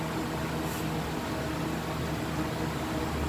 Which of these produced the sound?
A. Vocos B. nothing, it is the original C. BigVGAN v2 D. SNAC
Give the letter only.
B